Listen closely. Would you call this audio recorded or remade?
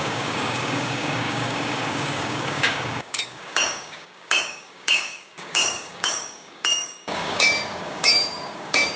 remade